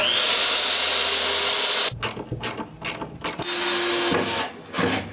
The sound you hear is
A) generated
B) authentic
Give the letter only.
B